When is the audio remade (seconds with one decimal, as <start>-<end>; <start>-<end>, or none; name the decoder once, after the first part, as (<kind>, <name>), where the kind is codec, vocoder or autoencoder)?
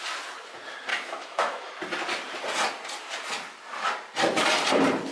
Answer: 0.9-1.7 (autoencoder, DAC-VAE)